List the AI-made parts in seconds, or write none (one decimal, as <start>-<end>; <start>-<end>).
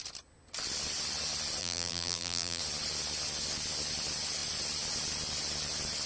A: 1.6-2.6